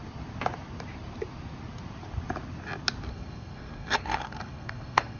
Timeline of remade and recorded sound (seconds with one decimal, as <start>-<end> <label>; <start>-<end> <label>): 0.0-3.1 recorded; 3.1-5.2 remade